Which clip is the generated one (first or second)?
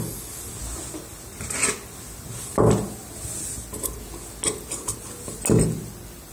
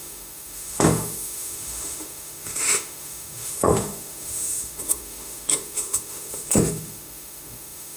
second